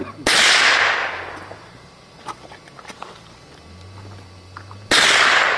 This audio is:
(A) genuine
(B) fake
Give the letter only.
A